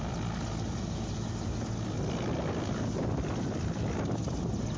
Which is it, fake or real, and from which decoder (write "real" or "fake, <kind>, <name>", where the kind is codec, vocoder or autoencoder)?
real